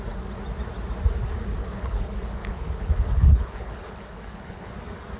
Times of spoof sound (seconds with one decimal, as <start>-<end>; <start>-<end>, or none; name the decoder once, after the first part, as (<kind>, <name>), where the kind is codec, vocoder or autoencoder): 1.6-4.7 (codec, HILCodec)

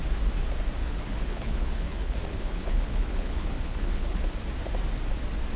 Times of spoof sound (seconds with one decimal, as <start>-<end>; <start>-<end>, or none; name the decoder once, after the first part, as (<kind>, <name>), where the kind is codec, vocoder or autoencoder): 0.8-4.2 (codec, HILCodec)

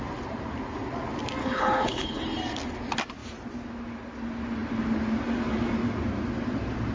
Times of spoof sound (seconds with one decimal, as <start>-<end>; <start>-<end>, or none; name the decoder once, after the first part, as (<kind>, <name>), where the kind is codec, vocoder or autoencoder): 1.4-2.2 (codec, HILCodec)

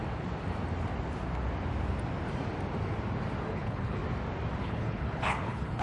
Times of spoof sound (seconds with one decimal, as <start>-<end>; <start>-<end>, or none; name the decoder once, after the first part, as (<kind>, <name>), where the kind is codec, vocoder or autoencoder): 3.5-4.0 (codec, HILCodec); 4.6-5.8

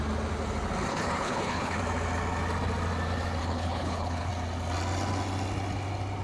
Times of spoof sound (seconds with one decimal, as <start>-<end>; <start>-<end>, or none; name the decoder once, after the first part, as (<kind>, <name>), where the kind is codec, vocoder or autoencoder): 0.9-1.8 (codec, HILCodec); 3.4-4.3

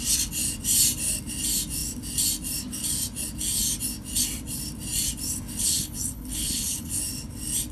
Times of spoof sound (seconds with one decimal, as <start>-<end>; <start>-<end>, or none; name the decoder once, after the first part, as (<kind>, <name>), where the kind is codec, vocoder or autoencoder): 5.6-7.0 (codec, HILCodec)